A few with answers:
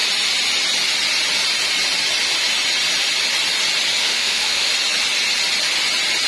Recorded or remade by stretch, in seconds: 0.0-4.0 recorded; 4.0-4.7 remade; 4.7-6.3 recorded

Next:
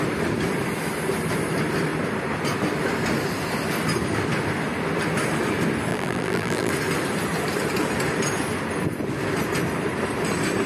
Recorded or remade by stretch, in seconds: 0.0-5.9 recorded; 5.9-6.7 remade; 6.7-10.7 recorded

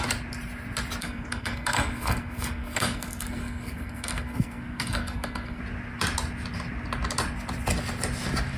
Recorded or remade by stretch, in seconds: 0.0-1.0 recorded; 1.0-5.6 remade; 5.6-8.6 recorded

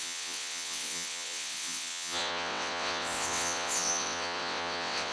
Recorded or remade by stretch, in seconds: 0.0-5.1 remade

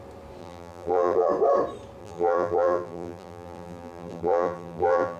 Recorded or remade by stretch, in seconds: 0.0-0.4 recorded; 0.4-1.3 remade; 1.3-2.0 recorded; 2.0-5.2 remade

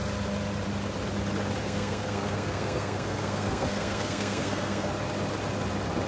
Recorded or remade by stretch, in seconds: 0.0-1.6 recorded; 1.6-4.9 remade; 4.9-6.1 recorded